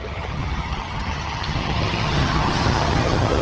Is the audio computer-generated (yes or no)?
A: yes